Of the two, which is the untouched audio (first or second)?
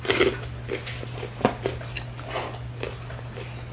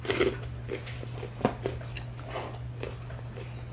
first